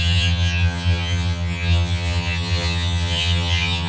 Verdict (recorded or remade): remade